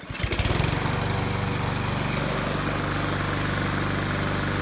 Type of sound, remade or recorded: recorded